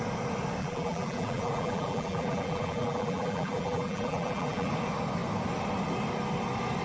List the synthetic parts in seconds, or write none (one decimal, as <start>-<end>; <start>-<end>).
0.6-4.7